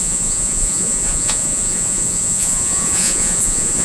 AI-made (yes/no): yes